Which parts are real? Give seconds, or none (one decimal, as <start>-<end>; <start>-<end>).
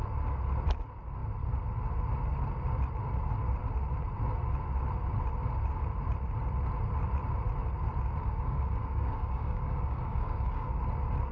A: 0.0-8.2; 10.8-11.3